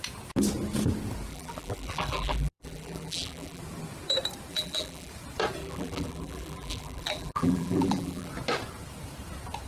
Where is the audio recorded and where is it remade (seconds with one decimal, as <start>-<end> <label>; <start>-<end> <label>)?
0.0-1.3 recorded; 1.3-3.6 remade; 3.6-4.5 recorded; 4.5-5.1 remade; 5.1-5.6 recorded; 5.6-8.3 remade; 8.3-9.7 recorded